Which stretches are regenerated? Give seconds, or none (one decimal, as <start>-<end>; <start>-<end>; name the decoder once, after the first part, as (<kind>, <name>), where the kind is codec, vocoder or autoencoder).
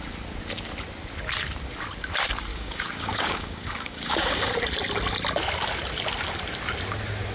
2.5-4.5 (codec, DAC)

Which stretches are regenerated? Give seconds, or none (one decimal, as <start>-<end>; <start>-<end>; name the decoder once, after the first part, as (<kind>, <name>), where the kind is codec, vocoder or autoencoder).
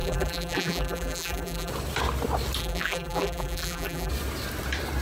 0.0-1.7 (vocoder, BigVGAN v2); 2.6-4.1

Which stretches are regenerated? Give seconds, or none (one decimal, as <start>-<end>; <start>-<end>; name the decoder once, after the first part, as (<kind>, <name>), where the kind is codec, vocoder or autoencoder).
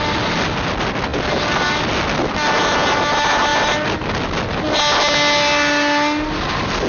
none